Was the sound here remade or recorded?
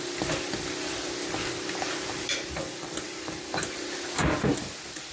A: recorded